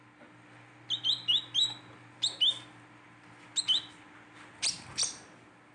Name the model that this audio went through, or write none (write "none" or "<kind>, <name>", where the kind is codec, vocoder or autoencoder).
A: none